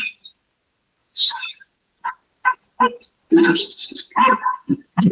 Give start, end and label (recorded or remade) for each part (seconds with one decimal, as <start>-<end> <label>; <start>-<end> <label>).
0.0-1.0 recorded; 1.0-2.1 remade; 2.1-4.5 recorded; 4.5-5.1 remade